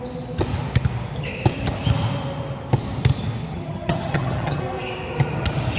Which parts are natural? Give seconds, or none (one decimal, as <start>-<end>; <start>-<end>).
0.0-3.5; 4.6-5.8